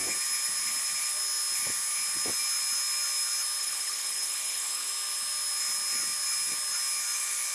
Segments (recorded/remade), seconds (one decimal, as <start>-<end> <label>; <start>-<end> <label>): 0.0-3.6 recorded; 3.6-4.9 remade; 4.9-7.5 recorded